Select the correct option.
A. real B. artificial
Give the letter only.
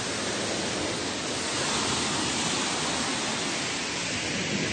A